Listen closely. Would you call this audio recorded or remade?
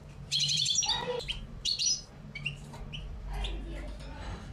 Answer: remade